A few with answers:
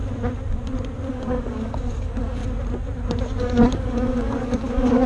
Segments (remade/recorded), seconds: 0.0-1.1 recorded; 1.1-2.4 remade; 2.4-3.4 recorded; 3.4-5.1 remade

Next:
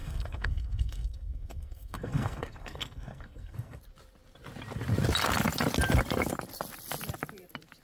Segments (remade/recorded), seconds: 0.0-3.8 remade; 3.8-7.8 recorded

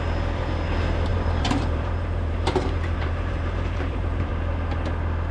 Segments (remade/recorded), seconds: 0.0-1.1 recorded; 1.1-4.3 remade; 4.3-5.3 recorded

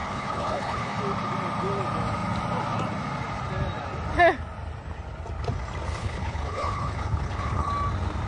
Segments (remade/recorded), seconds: 0.0-1.0 remade; 1.0-6.0 recorded; 6.0-7.7 remade; 7.7-8.3 recorded

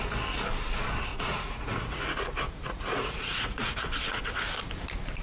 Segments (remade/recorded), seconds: 0.0-1.1 recorded; 1.1-4.2 remade; 4.2-5.2 recorded

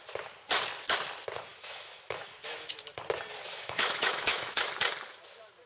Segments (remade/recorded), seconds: 0.0-1.5 recorded; 1.5-2.7 remade; 2.7-3.5 recorded; 3.5-4.7 remade; 4.7-5.7 recorded

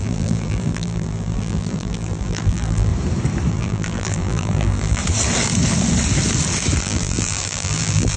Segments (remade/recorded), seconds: 0.0-2.9 remade; 2.9-3.5 recorded; 3.5-5.0 remade; 5.0-6.8 recorded; 6.8-8.2 remade

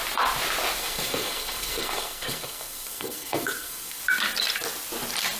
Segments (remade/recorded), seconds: 0.0-0.8 recorded; 0.8-4.0 remade; 4.0-5.4 recorded